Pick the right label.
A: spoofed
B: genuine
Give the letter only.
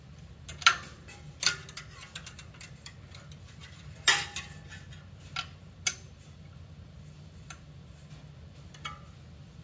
B